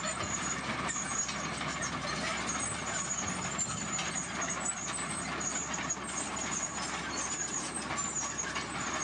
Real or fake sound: real